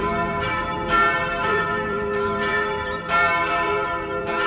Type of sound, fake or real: fake